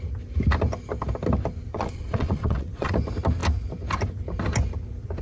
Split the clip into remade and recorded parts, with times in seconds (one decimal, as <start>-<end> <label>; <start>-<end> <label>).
0.0-1.7 recorded; 1.7-2.9 remade; 2.9-5.2 recorded